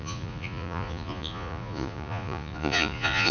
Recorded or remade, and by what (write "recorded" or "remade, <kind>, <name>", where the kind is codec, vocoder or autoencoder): remade, vocoder, Vocos